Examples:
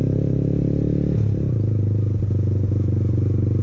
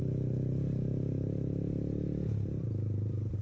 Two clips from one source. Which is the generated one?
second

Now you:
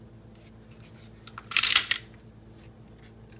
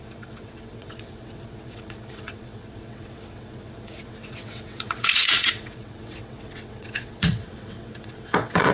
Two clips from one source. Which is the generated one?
second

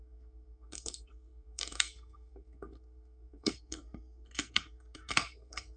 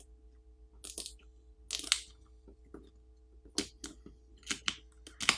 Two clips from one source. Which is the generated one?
first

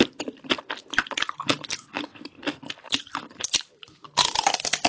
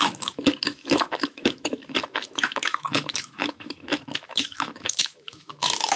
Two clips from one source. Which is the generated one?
second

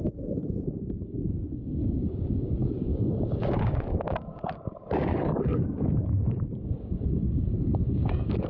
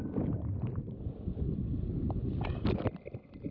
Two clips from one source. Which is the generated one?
first